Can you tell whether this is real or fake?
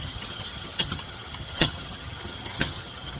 fake